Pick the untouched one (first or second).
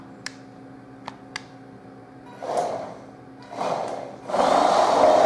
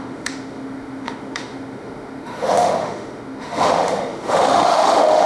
first